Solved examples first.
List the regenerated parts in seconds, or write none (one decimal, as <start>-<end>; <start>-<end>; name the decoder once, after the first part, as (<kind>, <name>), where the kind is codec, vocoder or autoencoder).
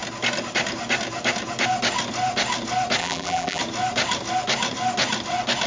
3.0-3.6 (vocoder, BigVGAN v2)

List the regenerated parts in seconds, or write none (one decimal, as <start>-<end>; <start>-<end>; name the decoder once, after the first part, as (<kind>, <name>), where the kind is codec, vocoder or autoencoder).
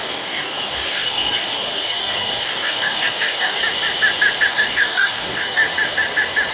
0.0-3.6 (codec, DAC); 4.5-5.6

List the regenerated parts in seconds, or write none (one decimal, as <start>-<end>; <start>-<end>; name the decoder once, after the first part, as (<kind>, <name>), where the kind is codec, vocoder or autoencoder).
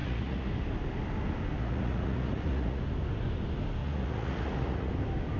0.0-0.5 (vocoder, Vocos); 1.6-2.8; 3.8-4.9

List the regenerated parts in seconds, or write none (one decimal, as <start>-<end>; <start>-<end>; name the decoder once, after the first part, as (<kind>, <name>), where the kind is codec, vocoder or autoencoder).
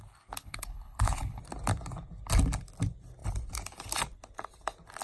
0.4-1.4 (codec, HILCodec)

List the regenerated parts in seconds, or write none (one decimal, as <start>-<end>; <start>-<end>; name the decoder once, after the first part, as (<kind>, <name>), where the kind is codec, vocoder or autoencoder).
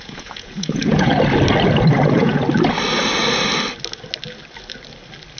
0.0-1.1 (vocoder, Vocos); 1.9-2.4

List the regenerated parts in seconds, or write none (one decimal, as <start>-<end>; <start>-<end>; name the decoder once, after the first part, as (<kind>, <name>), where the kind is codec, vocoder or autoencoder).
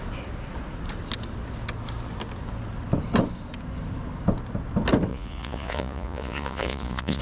5.1-7.2 (vocoder, Vocos)